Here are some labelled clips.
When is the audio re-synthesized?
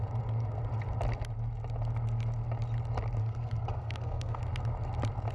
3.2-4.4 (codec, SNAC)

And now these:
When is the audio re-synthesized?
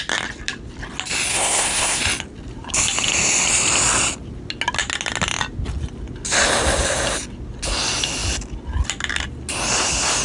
1.3-2.0 (codec, SNAC)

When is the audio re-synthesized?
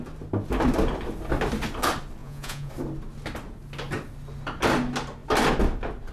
2.2-2.7 (vocoder, Vocos)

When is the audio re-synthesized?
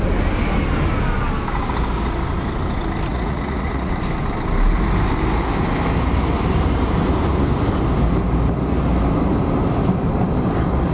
3.1-3.9 (vocoder, Vocos)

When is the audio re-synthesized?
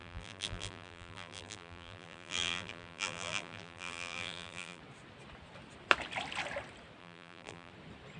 0.0-4.8 (vocoder, BigVGAN v2); 7.0-7.7